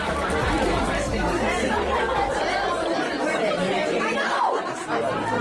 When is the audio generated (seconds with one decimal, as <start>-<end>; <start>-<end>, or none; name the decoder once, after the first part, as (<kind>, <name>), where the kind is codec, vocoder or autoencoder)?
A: none